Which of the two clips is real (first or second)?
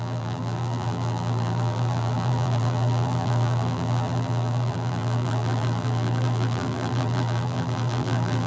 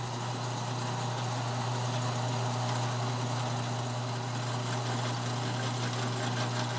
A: second